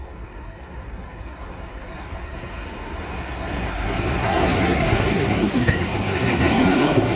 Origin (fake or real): fake